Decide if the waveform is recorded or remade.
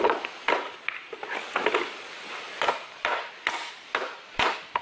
recorded